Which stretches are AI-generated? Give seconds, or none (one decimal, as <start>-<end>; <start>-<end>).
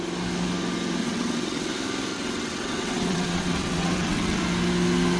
1.0-1.7; 2.1-4.4